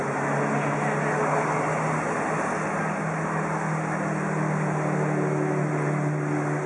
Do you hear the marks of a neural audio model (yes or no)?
no